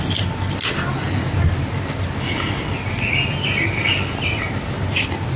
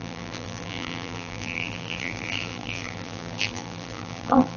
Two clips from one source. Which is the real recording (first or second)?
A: first